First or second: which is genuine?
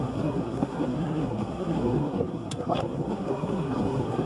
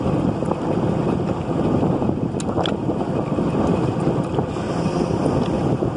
second